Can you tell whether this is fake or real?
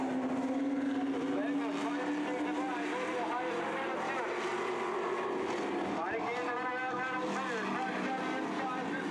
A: real